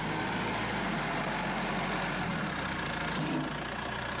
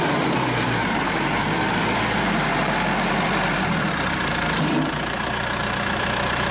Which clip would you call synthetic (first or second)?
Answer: second